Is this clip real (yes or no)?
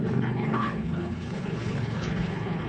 no